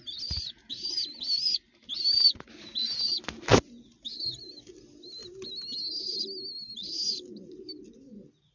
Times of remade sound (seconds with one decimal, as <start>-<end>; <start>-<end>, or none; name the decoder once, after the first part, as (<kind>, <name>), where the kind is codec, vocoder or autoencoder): none